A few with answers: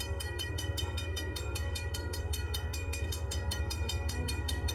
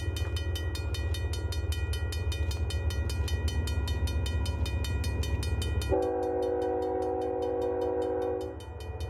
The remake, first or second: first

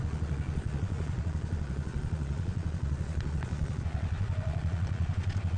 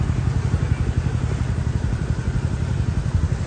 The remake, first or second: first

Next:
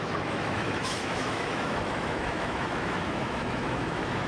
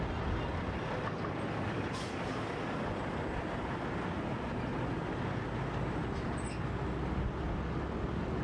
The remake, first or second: first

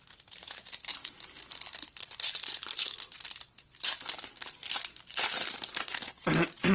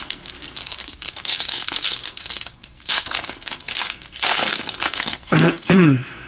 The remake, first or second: second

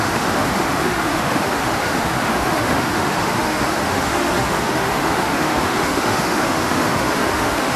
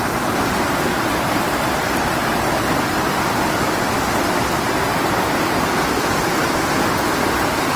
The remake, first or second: first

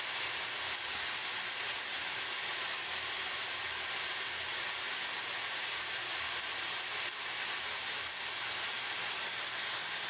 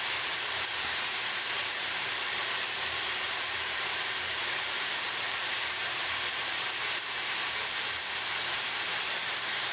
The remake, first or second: second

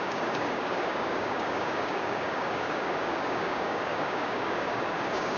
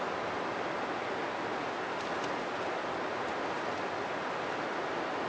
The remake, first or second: first